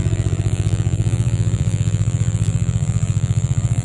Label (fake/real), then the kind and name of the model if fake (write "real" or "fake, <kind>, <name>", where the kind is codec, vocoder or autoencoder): fake, vocoder, BigVGAN v2